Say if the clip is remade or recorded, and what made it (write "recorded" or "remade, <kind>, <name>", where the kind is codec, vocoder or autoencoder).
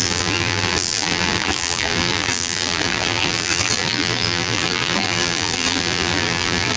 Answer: remade, vocoder, BigVGAN v2